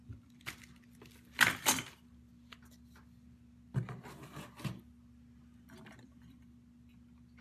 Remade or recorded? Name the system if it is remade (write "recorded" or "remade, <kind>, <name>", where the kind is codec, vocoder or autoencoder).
recorded